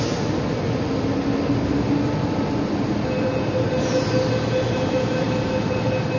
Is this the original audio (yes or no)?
yes